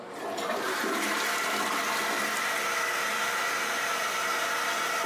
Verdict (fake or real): real